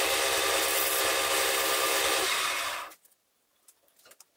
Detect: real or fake real